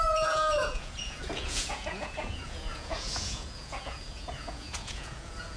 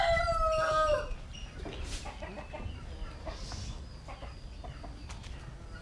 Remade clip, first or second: first